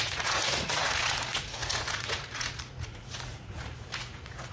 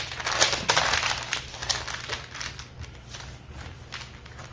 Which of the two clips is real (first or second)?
second